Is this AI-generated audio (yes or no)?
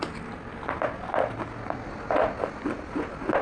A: no